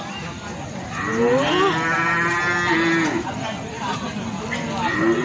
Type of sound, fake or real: real